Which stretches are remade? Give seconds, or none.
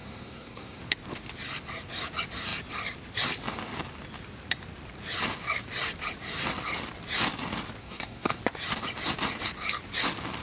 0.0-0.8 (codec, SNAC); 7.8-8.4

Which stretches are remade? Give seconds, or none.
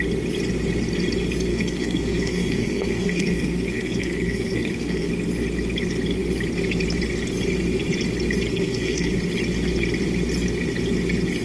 1.5-5.1 (codec, SNAC); 8.5-9.1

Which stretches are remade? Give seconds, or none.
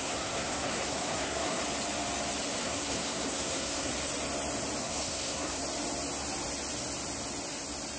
0.0-1.6 (codec, SNAC); 2.6-3.9; 4.8-5.6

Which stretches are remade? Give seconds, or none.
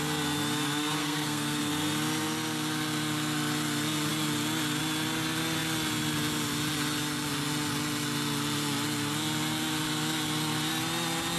1.0-1.6 (codec, SNAC)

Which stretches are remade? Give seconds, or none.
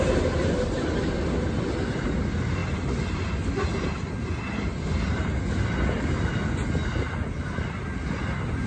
none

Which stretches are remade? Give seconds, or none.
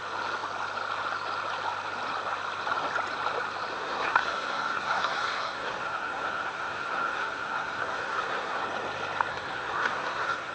3.7-8.6 (codec, SNAC); 9.3-10.5